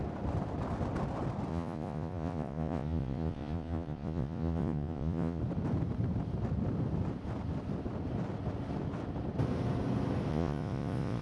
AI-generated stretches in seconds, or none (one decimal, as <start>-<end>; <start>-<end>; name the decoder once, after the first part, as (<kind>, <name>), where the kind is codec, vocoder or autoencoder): 1.5-5.4 (vocoder, Vocos); 10.3-11.2